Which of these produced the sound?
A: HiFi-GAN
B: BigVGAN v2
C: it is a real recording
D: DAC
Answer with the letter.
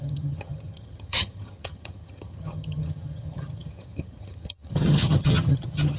A